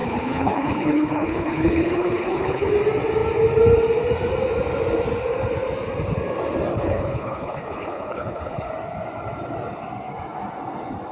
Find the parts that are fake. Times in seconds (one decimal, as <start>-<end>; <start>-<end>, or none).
0.0-2.7; 6.7-8.7